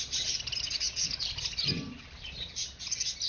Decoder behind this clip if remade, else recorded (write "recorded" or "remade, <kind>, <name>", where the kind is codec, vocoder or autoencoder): recorded